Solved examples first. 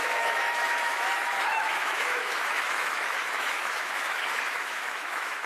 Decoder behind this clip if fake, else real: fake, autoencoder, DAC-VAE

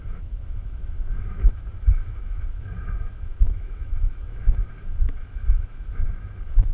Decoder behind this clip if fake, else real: fake, autoencoder, DAC-VAE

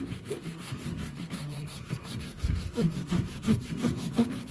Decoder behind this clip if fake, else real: fake, codec, SNAC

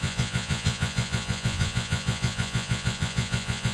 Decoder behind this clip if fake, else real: fake, vocoder, Vocos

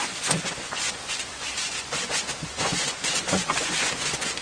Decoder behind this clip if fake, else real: fake, vocoder, Vocos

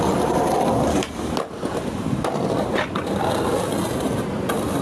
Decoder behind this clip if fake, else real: real